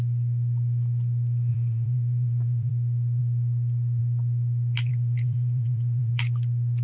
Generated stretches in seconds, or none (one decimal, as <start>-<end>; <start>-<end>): 1.5-2.7; 4.9-6.1